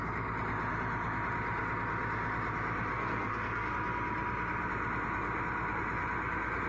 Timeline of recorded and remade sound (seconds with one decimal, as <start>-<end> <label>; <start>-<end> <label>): 0.0-2.9 recorded; 2.9-3.7 remade; 3.7-6.7 recorded